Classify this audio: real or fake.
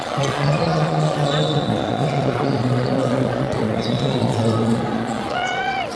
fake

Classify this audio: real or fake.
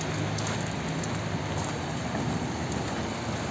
real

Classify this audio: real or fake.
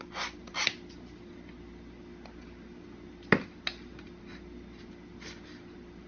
real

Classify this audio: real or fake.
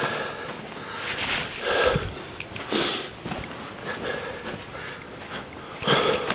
real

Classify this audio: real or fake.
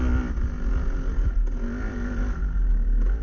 real